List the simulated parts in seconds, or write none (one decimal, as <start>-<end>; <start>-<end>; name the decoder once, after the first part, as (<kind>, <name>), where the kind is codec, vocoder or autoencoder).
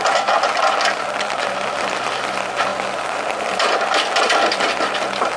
none